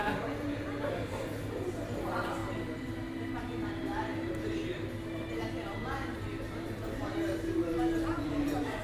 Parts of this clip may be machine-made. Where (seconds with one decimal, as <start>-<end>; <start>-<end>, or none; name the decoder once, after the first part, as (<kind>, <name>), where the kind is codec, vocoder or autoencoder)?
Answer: 0.0-2.4 (vocoder, BigVGAN v2); 3.4-8.8